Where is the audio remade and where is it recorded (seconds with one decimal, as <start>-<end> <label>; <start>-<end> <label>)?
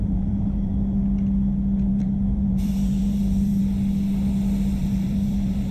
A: 0.0-0.7 remade; 0.7-1.9 recorded; 1.9-3.6 remade; 3.6-4.8 recorded; 4.8-5.7 remade